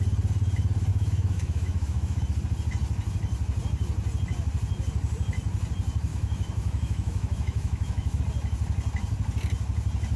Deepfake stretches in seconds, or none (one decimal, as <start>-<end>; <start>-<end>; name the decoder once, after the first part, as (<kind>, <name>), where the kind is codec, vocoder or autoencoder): 0.9-2.2 (autoencoder, DAC-VAE); 6.1-8.2